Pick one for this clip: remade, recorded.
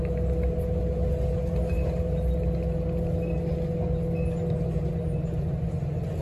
recorded